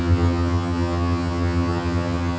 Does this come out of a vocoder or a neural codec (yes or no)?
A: yes